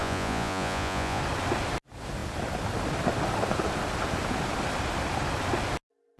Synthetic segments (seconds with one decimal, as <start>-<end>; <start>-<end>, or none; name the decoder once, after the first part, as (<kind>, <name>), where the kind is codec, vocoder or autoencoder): 0.0-1.2 (vocoder, Vocos)